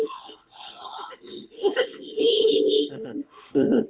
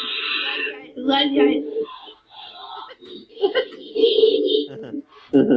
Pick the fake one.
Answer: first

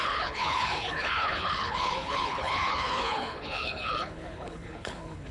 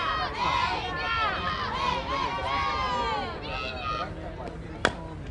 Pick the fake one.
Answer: first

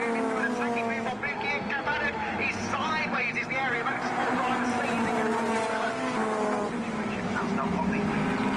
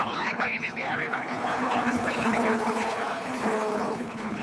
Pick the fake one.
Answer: second